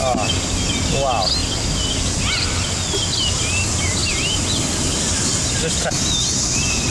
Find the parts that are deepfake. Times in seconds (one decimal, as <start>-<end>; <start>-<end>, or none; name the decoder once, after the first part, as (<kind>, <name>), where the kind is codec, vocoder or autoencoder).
none